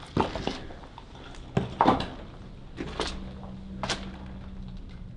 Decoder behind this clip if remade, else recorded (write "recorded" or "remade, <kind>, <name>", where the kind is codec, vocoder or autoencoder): recorded